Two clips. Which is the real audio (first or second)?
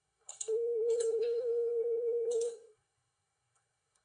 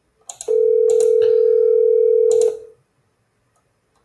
second